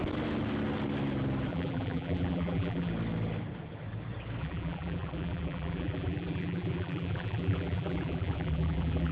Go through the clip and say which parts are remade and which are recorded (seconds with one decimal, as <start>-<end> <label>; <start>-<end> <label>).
0.0-1.5 recorded; 1.5-2.9 remade; 2.9-4.4 recorded; 4.4-9.1 remade